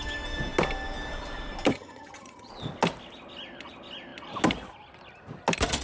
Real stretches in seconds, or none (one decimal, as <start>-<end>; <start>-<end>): 0.0-1.7; 2.5-5.8